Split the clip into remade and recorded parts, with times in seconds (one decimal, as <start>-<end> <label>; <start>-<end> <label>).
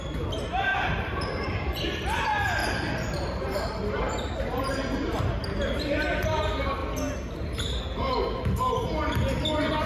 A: 0.0-0.7 recorded; 0.7-1.8 remade; 1.8-2.6 recorded; 2.6-5.3 remade; 5.3-9.9 recorded